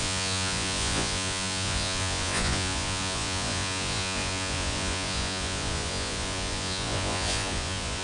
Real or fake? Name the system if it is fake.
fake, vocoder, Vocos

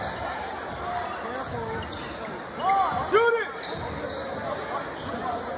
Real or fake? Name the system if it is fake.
real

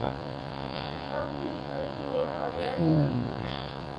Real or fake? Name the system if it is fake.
fake, vocoder, WaveNeXt